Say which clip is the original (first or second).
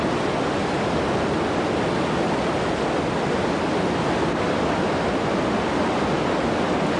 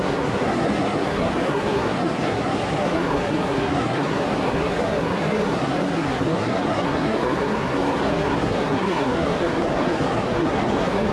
first